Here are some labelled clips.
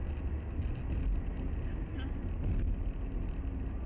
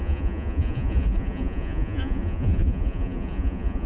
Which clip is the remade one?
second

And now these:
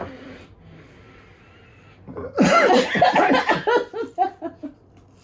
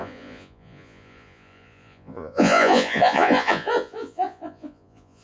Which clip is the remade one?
second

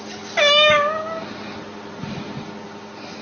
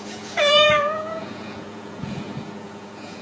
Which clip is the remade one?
second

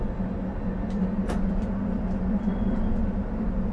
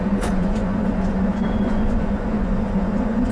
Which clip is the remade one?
second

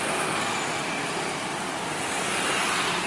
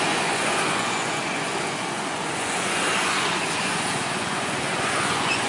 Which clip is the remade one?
second